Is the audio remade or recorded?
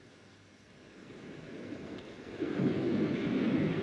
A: remade